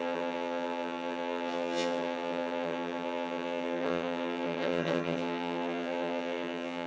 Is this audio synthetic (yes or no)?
yes